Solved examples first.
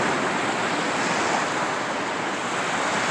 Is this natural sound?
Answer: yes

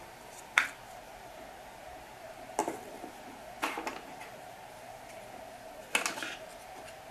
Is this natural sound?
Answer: yes